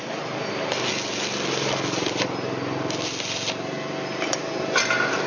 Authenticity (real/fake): real